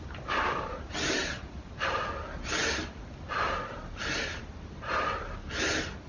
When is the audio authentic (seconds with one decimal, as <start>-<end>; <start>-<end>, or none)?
0.0-6.1